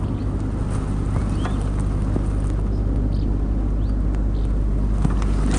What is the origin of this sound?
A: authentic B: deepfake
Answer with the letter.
A